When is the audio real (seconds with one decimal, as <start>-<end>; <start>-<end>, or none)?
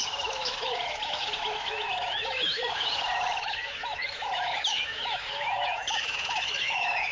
none